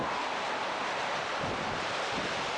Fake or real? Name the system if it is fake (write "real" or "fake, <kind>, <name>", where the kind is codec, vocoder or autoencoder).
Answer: real